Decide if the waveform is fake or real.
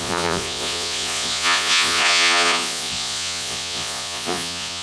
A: fake